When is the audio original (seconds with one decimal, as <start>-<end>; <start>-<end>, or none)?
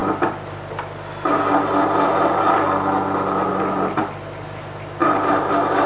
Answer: 0.0-5.0